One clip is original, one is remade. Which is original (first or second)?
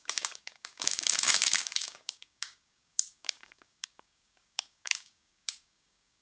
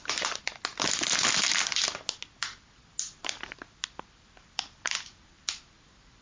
second